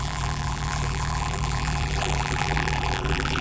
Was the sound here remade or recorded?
remade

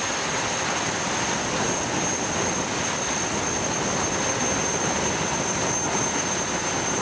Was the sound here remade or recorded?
recorded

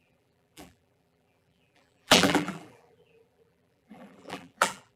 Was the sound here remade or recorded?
remade